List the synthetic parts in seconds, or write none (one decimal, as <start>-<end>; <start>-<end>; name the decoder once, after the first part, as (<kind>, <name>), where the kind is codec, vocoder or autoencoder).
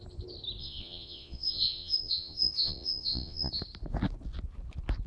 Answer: 0.6-3.5 (vocoder, Vocos)